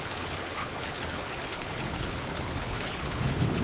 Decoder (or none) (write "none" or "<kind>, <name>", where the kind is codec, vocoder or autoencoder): codec, HILCodec